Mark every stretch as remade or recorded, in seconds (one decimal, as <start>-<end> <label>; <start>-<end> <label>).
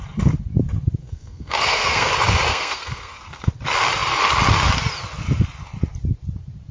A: 0.0-1.0 recorded; 1.0-2.1 remade; 2.1-2.5 recorded; 2.5-3.5 remade; 3.5-6.7 recorded